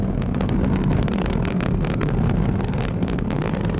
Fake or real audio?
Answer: fake